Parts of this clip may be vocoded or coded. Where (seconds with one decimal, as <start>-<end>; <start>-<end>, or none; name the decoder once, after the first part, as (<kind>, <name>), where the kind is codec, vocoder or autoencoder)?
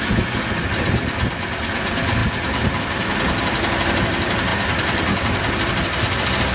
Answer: none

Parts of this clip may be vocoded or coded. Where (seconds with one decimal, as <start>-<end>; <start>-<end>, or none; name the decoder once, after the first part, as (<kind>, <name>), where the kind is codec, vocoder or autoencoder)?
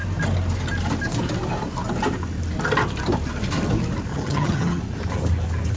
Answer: 4.1-4.8 (vocoder, HiFi-GAN)